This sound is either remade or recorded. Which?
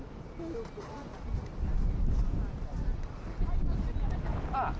recorded